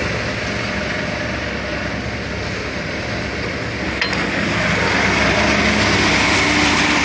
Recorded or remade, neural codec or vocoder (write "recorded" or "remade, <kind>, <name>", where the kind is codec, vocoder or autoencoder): recorded